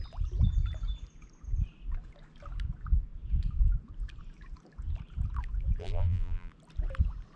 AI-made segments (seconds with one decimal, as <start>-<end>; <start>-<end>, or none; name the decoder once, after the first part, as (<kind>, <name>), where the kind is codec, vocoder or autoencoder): 5.8-6.5 (vocoder, BigVGAN v2)